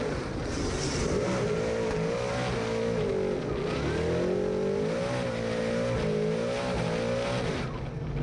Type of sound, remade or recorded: recorded